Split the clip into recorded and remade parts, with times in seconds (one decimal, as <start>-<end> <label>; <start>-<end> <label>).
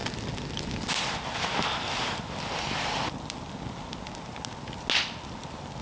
0.0-5.8 recorded